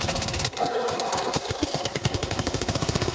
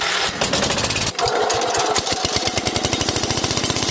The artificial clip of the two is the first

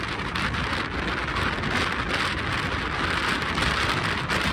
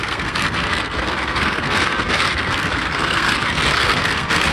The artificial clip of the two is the second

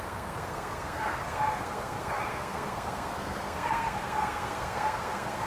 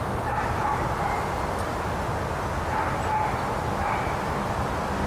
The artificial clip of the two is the first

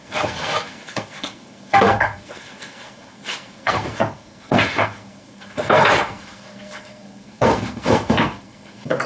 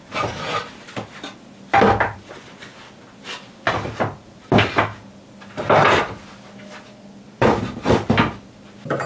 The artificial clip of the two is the first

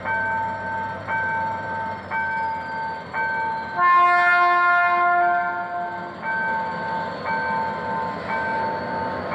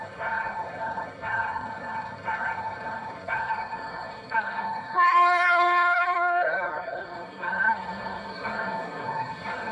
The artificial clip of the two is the second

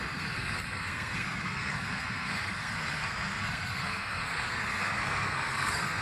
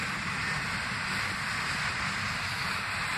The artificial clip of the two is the first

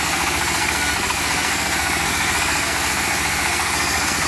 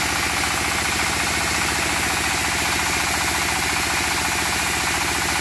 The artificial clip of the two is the first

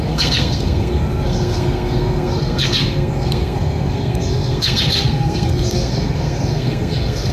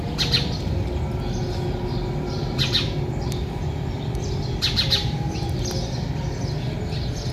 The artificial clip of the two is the first